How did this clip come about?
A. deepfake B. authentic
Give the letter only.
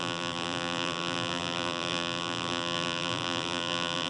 A